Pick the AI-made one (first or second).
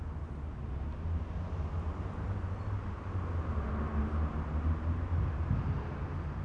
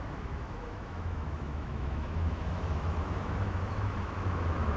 second